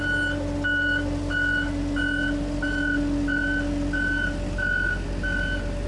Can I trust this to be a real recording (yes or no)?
yes